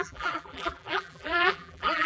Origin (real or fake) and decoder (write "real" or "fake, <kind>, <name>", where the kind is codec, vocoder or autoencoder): fake, vocoder, BigVGAN v2